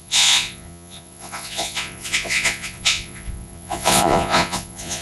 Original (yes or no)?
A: no